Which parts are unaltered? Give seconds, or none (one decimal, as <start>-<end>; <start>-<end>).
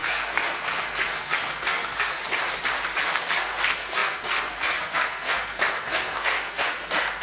2.2-3.0